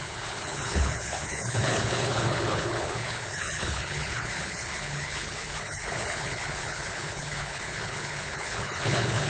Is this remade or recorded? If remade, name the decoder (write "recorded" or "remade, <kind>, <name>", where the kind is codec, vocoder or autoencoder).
remade, codec, HILCodec